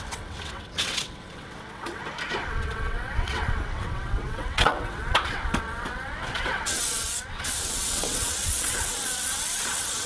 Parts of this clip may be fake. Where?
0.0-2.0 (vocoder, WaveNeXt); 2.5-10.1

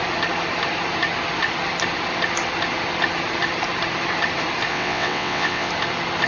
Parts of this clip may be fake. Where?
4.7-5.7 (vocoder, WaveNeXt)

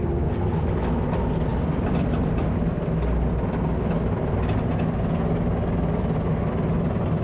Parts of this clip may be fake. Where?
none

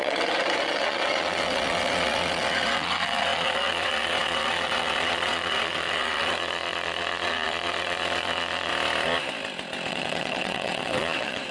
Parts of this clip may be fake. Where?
0.0-8.7 (vocoder, WaveNeXt); 9.9-11.5